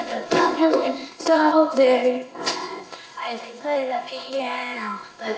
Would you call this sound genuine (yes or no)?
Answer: no